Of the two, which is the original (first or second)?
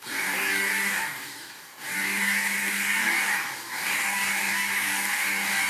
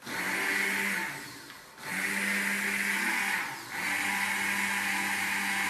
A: second